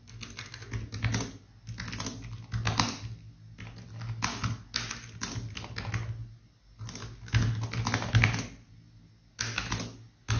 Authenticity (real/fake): real